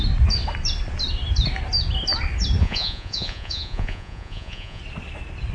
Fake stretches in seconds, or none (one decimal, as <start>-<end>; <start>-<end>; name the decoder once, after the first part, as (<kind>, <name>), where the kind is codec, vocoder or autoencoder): 2.6-4.8 (vocoder, Vocos)